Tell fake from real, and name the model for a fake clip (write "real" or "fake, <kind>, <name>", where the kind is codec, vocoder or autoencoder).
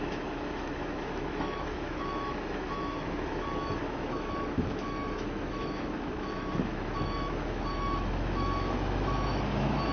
fake, autoencoder, DAC-VAE